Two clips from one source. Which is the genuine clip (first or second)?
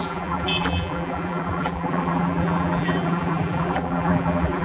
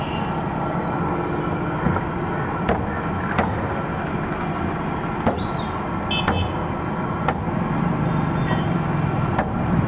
second